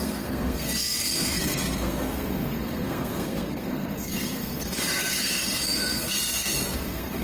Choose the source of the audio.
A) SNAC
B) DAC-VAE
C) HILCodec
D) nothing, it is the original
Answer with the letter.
A